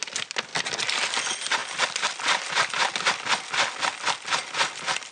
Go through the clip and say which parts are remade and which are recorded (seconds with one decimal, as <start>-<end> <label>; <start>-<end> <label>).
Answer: 0.0-5.1 recorded